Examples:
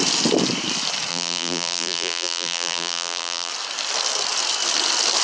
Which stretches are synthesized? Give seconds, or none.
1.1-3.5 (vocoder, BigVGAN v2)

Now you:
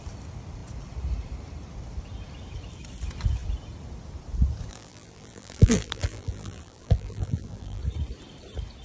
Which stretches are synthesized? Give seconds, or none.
4.7-7.8 (vocoder, BigVGAN v2)

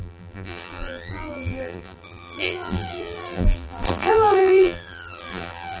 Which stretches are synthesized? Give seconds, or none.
0.0-5.8 (vocoder, BigVGAN v2)

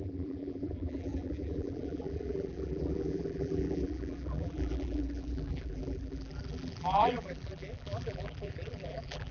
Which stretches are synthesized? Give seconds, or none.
0.0-9.3 (vocoder, BigVGAN v2)

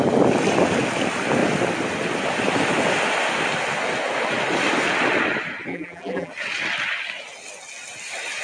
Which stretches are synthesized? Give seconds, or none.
5.7-6.3 (vocoder, BigVGAN v2)

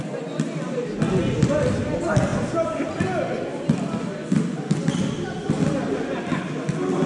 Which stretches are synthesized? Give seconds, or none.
3.5-5.5 (vocoder, BigVGAN v2)

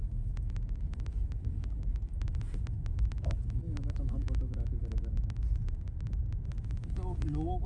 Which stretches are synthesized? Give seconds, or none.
0.0-0.8 (vocoder, BigVGAN v2)